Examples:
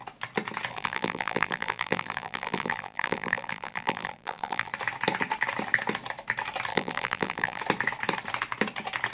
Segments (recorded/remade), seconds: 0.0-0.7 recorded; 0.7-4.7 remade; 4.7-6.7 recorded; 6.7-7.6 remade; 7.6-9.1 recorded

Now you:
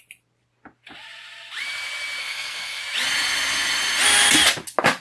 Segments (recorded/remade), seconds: 0.0-2.2 recorded; 2.2-2.8 remade; 2.8-5.0 recorded

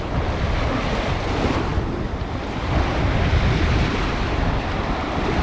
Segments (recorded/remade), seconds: 0.0-5.4 recorded